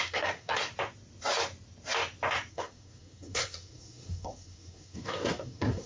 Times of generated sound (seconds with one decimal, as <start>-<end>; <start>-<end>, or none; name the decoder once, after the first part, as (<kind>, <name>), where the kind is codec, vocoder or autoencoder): 0.0-0.7 (codec, SNAC); 2.5-5.9

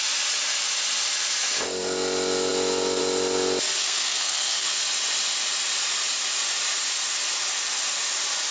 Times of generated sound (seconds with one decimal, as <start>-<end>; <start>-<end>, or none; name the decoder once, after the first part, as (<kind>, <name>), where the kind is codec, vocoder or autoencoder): 3.8-4.8 (codec, SNAC)

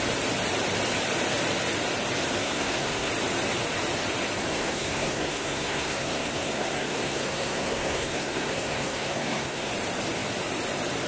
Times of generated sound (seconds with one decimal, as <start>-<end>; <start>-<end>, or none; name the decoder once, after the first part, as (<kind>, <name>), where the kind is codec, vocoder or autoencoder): 2.4-3.1 (codec, SNAC); 4.5-9.7

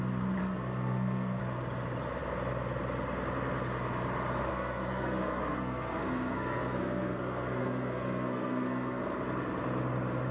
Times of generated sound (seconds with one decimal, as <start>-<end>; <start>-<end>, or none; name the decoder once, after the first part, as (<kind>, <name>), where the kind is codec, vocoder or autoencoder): 0.4-1.4 (codec, SNAC); 4.5-9.0